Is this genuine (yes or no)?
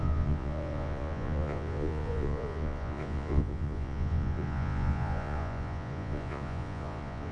no